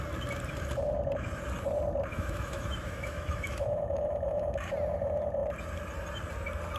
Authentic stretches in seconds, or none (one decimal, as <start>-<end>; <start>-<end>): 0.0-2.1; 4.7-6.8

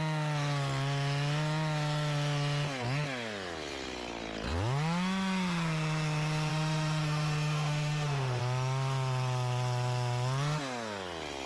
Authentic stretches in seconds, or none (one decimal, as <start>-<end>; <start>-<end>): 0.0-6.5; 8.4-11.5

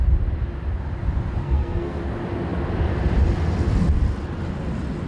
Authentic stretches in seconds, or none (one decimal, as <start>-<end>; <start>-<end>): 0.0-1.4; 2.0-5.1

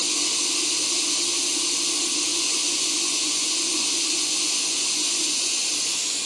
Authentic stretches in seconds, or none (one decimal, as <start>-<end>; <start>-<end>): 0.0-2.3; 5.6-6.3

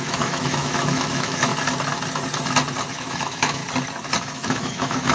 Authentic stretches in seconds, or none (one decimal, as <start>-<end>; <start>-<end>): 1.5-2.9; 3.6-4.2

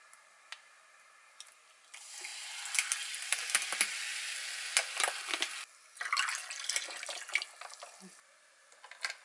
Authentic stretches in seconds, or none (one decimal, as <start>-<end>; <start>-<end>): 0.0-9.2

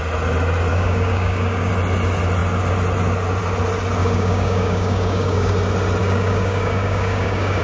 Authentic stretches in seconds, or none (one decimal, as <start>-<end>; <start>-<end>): 0.0-0.7; 1.7-4.0; 5.5-6.0

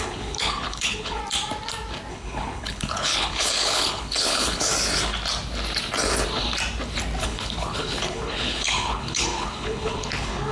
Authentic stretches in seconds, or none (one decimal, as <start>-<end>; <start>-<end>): 1.2-2.1; 4.7-7.2